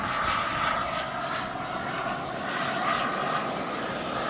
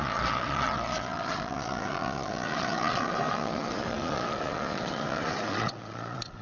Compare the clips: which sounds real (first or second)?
first